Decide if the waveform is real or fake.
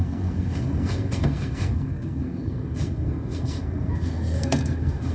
fake